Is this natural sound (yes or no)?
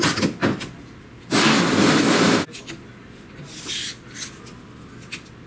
yes